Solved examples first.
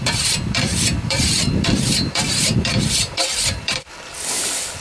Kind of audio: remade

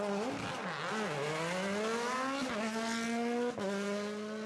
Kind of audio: recorded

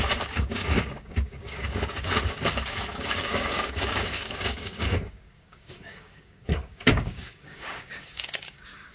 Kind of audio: remade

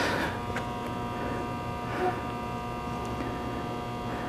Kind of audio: recorded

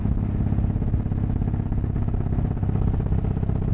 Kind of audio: recorded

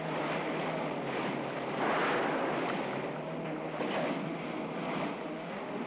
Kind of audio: recorded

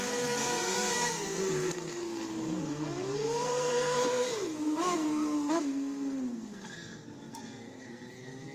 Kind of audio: remade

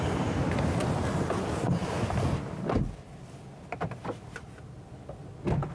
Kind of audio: recorded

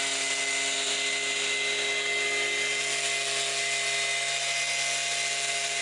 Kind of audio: recorded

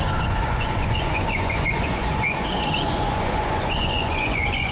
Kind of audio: remade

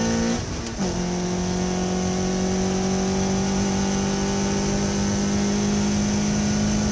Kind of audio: recorded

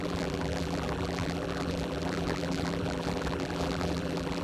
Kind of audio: remade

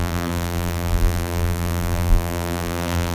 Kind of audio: remade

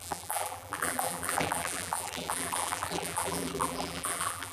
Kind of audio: remade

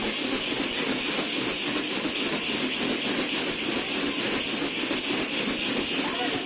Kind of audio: recorded